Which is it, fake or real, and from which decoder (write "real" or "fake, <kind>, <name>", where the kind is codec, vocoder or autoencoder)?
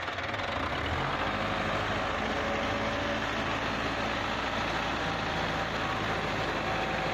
real